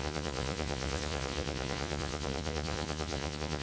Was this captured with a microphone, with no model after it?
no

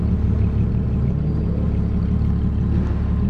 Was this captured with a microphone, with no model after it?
yes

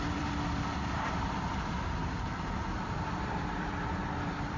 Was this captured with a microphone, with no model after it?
no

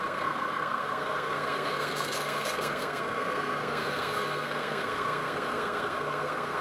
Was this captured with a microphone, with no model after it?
no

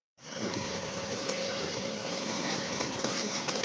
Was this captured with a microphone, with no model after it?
no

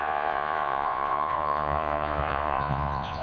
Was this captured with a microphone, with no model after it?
no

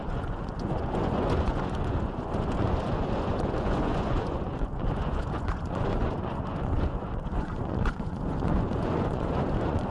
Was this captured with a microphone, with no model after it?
no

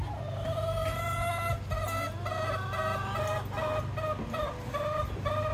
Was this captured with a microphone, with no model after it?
yes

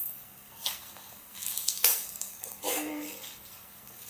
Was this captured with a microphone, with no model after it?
no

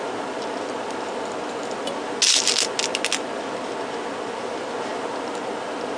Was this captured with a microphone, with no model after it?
yes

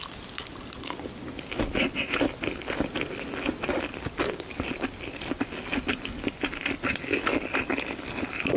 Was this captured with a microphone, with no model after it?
yes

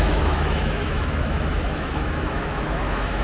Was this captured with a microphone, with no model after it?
no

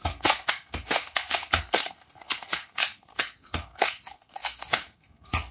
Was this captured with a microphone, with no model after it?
no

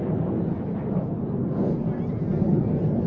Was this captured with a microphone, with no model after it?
yes